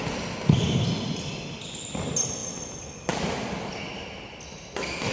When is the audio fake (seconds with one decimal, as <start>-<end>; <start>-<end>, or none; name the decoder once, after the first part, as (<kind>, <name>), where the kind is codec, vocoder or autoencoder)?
none

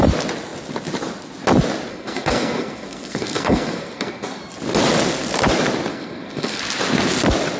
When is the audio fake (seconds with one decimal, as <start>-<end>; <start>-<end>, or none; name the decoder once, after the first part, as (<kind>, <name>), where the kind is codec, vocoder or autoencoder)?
1.9-4.4 (codec, SNAC); 5.9-6.6

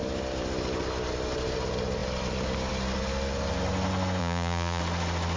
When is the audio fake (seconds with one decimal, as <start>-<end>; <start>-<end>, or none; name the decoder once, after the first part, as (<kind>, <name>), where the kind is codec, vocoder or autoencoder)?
4.2-4.8 (vocoder, Vocos)

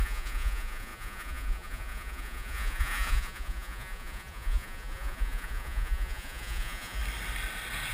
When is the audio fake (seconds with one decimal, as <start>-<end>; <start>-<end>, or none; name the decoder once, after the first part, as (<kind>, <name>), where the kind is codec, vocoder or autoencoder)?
0.0-7.0 (vocoder, Vocos)